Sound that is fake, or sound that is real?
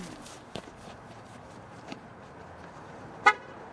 fake